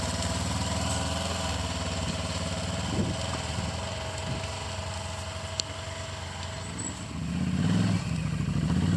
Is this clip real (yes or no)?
yes